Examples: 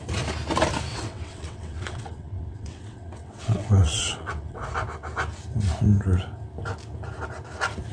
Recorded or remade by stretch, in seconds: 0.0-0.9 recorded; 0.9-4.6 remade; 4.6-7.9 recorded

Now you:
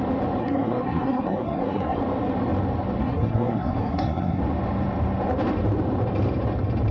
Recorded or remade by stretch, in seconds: 0.0-0.4 recorded; 0.4-2.0 remade; 2.0-3.0 recorded; 3.0-4.4 remade; 4.4-6.9 recorded

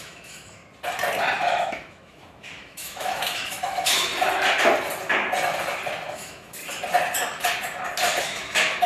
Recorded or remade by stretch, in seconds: 0.0-0.6 remade; 0.6-1.4 recorded; 1.4-4.1 remade; 4.1-6.1 recorded; 6.1-6.6 remade; 6.6-8.2 recorded; 8.2-8.9 remade

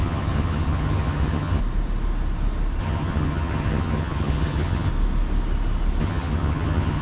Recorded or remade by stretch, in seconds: 0.0-1.6 remade; 1.6-2.8 recorded; 2.8-4.9 remade; 4.9-6.0 recorded; 6.0-7.0 remade